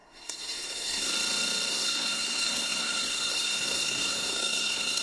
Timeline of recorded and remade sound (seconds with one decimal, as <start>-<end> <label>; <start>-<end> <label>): 0.0-1.1 remade; 1.1-1.7 recorded; 1.7-5.0 remade